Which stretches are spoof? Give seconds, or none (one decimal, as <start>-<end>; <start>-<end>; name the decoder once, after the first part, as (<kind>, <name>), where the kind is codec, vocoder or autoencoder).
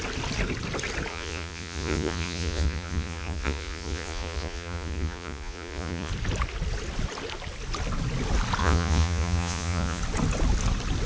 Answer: 1.1-6.1 (vocoder, Vocos); 8.6-10.0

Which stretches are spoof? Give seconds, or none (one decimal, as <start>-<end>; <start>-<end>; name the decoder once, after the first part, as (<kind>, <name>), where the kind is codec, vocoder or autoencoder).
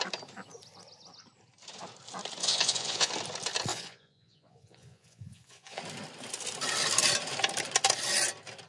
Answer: 2.4-3.1 (vocoder, Vocos); 3.7-5.8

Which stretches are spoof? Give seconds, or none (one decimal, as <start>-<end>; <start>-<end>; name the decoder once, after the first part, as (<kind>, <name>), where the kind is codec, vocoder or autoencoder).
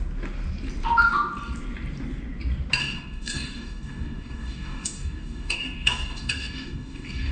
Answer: 2.8-7.3 (codec, DAC)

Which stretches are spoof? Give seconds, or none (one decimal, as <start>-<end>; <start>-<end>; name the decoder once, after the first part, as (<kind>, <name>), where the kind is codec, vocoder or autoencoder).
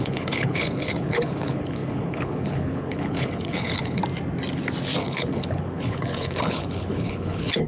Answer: 0.0-4.0 (codec, HILCodec); 5.0-7.7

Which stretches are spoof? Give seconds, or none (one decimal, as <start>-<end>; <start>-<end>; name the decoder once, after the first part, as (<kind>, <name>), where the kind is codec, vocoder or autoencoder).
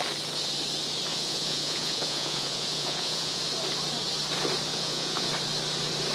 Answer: 1.1-3.4 (vocoder, Vocos); 4.7-5.3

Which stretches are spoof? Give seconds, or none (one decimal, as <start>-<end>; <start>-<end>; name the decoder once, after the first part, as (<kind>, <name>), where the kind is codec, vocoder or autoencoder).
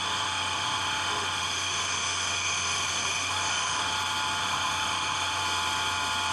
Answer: 0.0-3.9 (autoencoder, DAC-VAE); 4.4-5.4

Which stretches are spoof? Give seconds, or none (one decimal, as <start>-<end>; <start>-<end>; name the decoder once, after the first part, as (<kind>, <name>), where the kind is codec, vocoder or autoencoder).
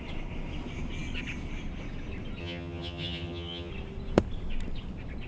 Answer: 2.4-3.7 (vocoder, HiFi-GAN)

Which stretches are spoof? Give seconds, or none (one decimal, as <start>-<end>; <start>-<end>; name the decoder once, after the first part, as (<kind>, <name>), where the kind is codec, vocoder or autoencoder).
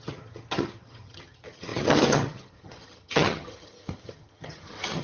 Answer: 0.0-5.0 (vocoder, HiFi-GAN)